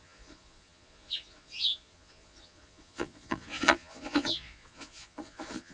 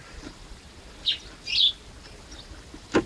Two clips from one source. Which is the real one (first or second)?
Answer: second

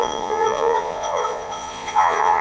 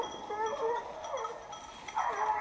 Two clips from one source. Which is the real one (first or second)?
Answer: second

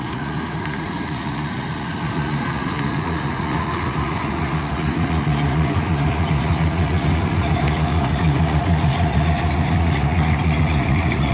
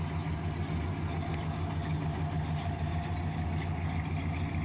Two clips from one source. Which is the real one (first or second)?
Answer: second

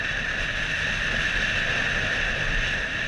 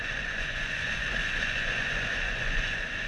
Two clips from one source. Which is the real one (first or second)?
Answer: first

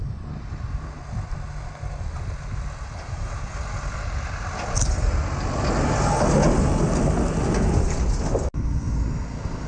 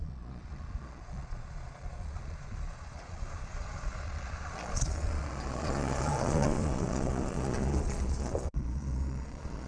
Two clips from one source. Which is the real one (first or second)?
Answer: first